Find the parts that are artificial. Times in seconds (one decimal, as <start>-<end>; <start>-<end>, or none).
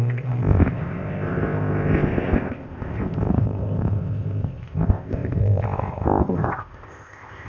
0.0-7.5